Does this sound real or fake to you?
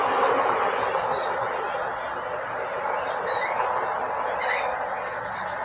real